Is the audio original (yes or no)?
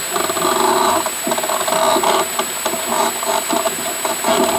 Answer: yes